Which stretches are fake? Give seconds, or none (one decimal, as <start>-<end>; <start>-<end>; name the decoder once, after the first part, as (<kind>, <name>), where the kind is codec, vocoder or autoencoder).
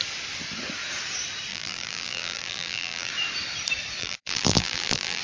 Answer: 1.5-3.1 (vocoder, BigVGAN v2); 4.0-5.2